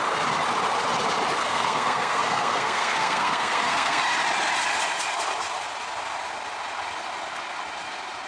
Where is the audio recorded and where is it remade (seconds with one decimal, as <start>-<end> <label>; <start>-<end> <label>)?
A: 0.0-1.4 recorded; 1.4-4.0 remade; 4.0-8.3 recorded